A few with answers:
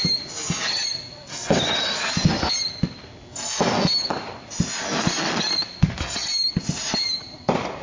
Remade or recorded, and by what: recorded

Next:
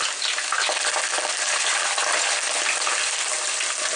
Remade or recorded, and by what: recorded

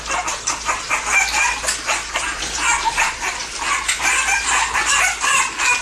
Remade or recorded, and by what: recorded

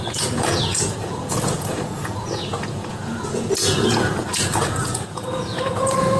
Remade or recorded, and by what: remade, vocoder, Vocos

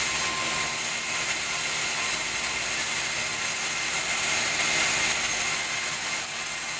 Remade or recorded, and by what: recorded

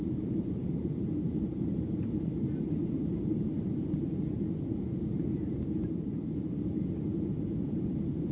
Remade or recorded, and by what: remade, vocoder, BigVGAN v2